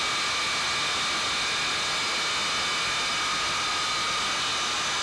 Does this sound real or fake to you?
real